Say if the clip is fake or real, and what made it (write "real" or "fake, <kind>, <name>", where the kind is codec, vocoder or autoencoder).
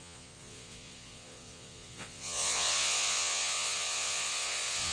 fake, vocoder, Vocos